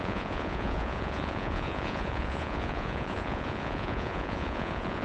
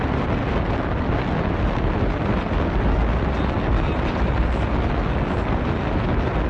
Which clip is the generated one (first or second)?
first